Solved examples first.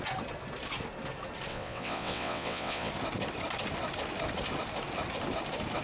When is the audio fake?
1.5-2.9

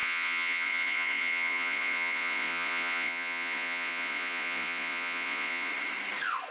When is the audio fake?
0.0-5.7

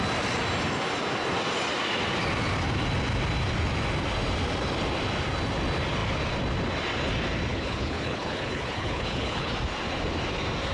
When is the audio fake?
7.5-9.5

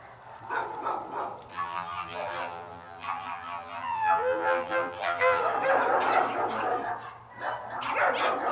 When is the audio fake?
1.5-5.4

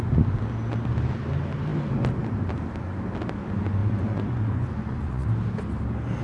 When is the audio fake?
3.8-5.3